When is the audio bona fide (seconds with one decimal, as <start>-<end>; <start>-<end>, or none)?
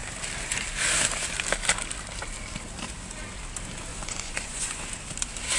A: 0.0-3.9; 4.8-5.6